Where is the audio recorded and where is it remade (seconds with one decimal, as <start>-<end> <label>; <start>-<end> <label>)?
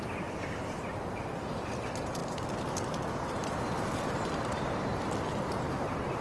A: 0.0-5.3 recorded; 5.3-6.2 remade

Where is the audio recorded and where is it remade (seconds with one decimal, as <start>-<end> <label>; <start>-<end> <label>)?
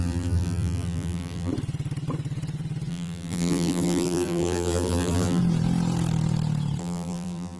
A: 0.0-1.5 remade; 1.5-2.9 recorded; 2.9-5.4 remade; 5.4-6.8 recorded; 6.8-7.6 remade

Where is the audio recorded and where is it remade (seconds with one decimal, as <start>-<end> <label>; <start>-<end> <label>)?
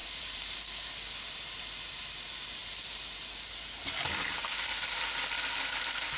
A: 0.0-0.6 remade; 0.6-6.2 recorded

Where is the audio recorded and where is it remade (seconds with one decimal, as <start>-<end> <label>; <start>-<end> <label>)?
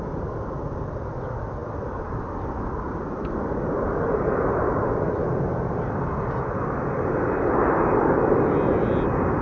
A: 0.0-9.4 recorded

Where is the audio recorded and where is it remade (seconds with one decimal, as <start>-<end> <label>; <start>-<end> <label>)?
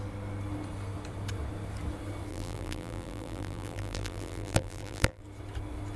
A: 0.0-2.3 recorded; 2.3-5.2 remade; 5.2-6.0 recorded